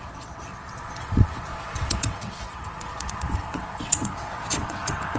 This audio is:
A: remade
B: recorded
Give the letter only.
A